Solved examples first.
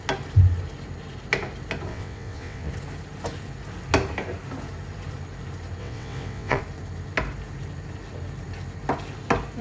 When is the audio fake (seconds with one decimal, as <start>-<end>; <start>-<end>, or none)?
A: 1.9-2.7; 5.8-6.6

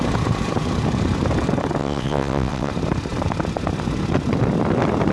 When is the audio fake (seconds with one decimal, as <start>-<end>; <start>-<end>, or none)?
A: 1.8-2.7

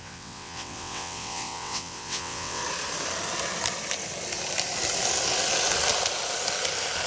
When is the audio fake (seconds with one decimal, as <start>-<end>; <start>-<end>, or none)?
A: 0.0-2.6